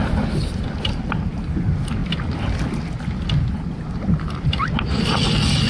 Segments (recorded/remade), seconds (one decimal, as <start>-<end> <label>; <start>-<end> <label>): 0.0-5.7 recorded